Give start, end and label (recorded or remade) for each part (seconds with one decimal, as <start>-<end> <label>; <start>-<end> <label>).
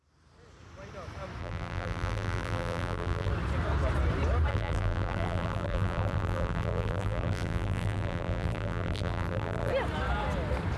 0.0-1.4 recorded; 1.4-3.3 remade; 3.3-4.5 recorded; 4.5-9.7 remade; 9.7-10.8 recorded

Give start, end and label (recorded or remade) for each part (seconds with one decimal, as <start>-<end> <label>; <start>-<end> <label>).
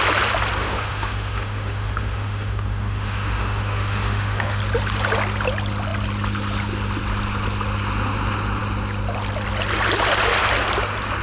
0.0-0.6 recorded; 0.6-4.6 remade; 4.6-11.2 recorded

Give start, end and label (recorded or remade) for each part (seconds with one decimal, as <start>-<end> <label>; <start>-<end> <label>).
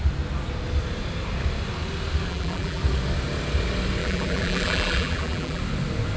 0.0-2.3 recorded; 2.3-2.8 remade; 2.8-4.0 recorded; 4.0-5.6 remade; 5.6-6.2 recorded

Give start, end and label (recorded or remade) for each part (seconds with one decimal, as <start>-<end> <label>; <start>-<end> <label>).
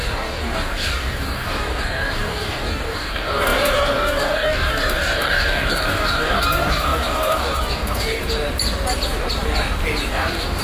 0.0-8.2 remade; 8.2-10.1 recorded; 10.1-10.6 remade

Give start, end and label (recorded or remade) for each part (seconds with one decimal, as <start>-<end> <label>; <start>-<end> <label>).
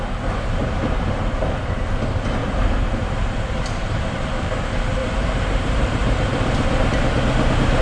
0.0-0.6 recorded; 0.6-1.1 remade; 1.1-2.4 recorded; 2.4-4.3 remade; 4.3-5.0 recorded; 5.0-6.9 remade; 6.9-7.8 recorded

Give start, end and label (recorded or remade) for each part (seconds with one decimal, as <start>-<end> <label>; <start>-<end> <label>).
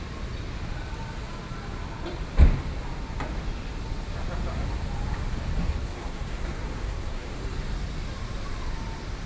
0.0-5.6 recorded; 5.6-7.3 remade; 7.3-9.3 recorded